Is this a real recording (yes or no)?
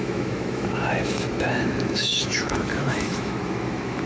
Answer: no